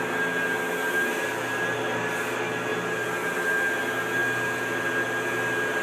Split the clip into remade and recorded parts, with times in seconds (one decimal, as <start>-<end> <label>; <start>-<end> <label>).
0.0-5.8 recorded